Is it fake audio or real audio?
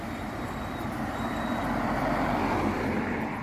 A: fake